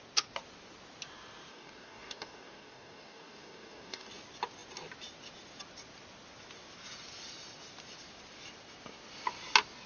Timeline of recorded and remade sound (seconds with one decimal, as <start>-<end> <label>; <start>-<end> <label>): 0.0-1.5 recorded; 1.5-4.1 remade; 4.1-9.9 recorded